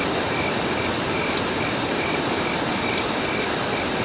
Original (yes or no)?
yes